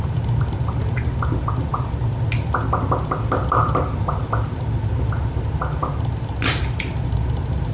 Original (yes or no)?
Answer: yes